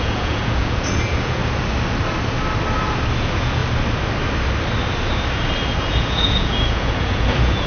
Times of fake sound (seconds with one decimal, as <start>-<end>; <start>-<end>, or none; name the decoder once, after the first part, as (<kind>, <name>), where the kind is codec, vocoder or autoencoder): 0.0-1.4 (vocoder, Vocos); 3.2-3.6; 5.8-7.7